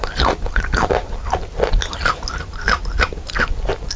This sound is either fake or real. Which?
real